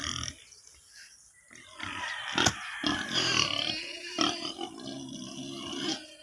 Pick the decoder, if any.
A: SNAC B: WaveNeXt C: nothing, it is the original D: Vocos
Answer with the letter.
C